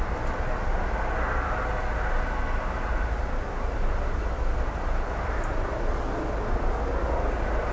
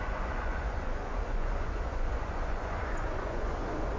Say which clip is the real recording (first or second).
first